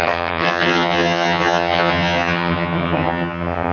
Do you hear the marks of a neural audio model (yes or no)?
yes